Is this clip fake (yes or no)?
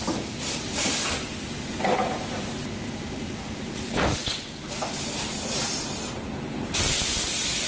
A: no